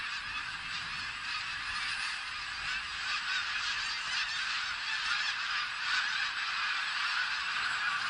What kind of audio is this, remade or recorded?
recorded